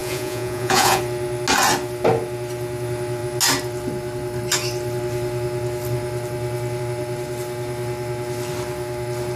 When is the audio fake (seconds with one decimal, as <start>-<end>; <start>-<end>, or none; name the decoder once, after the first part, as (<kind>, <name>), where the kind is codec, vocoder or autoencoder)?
0.0-1.0 (vocoder, Vocos)